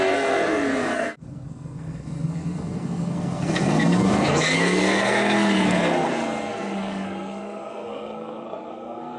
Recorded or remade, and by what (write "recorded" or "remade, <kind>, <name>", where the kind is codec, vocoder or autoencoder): remade, codec, SNAC